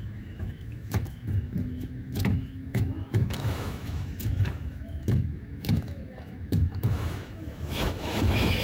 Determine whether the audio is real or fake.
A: fake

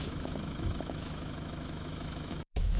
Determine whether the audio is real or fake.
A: fake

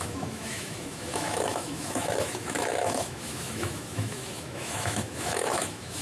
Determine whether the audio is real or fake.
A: fake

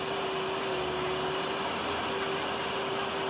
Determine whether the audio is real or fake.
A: real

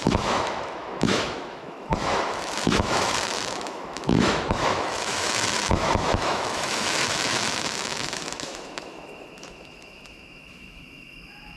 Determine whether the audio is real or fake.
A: fake